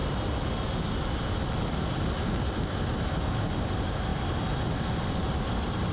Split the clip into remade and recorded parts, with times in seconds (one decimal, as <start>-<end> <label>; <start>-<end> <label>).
0.0-5.9 recorded